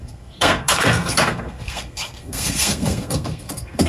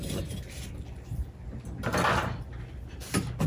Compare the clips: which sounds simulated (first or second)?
first